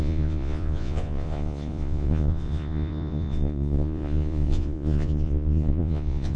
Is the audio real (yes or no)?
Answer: no